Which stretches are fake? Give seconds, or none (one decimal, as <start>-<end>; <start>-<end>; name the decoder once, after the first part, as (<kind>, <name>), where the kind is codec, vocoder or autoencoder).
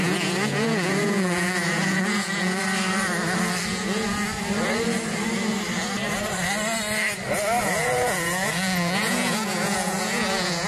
0.0-2.6 (vocoder, Vocos); 3.7-4.3; 7.6-10.7